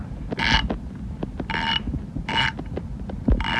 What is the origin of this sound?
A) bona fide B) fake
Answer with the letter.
A